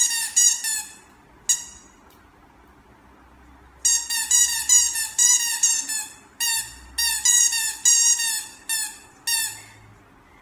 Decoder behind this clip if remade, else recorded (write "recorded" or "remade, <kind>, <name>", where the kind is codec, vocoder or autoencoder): recorded